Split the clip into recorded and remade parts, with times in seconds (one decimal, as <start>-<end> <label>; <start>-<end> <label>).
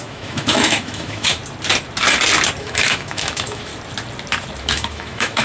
0.0-1.4 remade; 1.4-2.6 recorded; 2.6-3.7 remade; 3.7-4.6 recorded; 4.6-5.4 remade